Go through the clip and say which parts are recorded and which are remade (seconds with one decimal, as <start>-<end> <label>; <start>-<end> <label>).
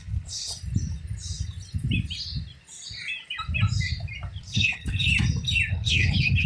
0.0-0.5 remade; 0.5-4.4 recorded; 4.4-5.1 remade; 5.1-5.7 recorded; 5.7-6.5 remade